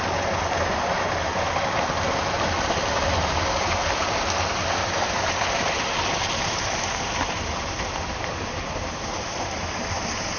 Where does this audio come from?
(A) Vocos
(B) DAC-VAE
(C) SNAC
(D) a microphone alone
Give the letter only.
D